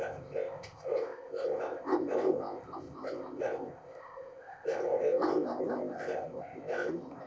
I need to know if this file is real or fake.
fake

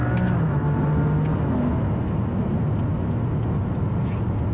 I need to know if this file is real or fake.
real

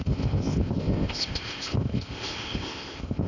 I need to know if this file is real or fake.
fake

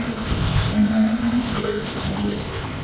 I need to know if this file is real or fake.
fake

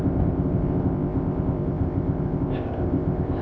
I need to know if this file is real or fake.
fake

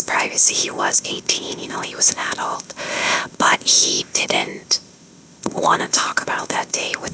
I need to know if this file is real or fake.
fake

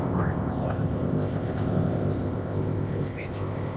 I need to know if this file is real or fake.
fake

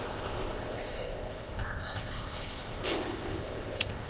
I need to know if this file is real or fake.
fake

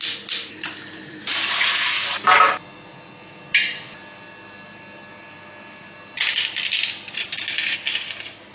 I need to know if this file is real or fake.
real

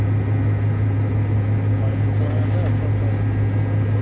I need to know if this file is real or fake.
real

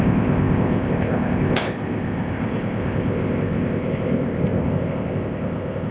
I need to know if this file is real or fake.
fake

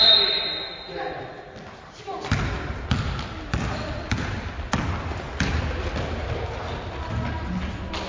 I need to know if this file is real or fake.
real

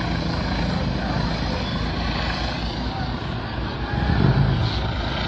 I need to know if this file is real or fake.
real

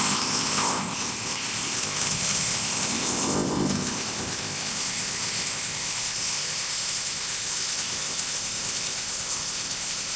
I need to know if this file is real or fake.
fake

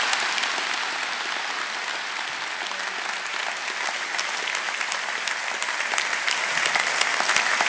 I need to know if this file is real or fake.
real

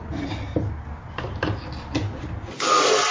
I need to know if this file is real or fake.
real